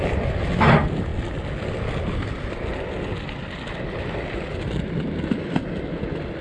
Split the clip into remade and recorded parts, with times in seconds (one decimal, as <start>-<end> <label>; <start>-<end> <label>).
0.0-6.4 recorded